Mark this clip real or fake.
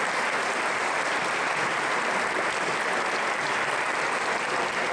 real